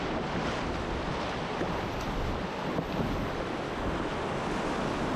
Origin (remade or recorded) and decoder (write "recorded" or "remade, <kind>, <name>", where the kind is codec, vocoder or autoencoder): recorded